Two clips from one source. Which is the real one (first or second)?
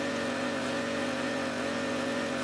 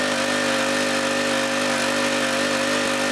second